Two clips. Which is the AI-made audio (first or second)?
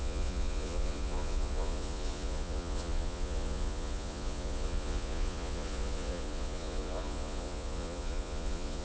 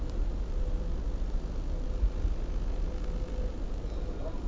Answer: first